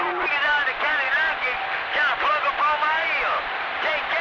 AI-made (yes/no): yes